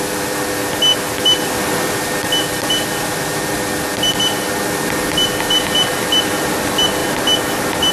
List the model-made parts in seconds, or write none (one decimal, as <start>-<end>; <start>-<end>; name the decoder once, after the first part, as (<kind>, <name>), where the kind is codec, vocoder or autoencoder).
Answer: none